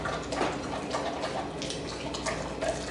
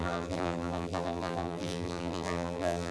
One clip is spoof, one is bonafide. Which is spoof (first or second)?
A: second